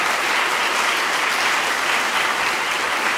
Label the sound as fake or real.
real